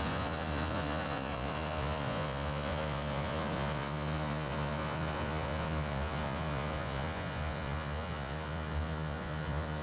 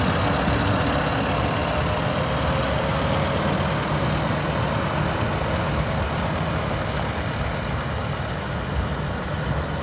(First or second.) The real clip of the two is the second